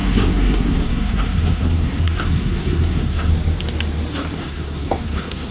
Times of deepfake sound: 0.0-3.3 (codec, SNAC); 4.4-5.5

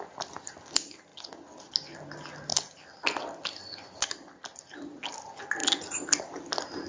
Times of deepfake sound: none

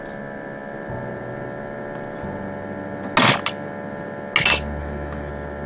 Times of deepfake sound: 4.8-5.3 (autoencoder, DAC-VAE)

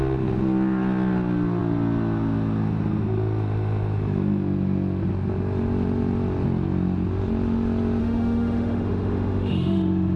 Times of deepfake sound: 8.0-10.2 (autoencoder, DAC-VAE)